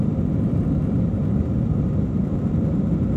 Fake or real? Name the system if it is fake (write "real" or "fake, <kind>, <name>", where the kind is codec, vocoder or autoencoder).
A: fake, vocoder, BigVGAN v2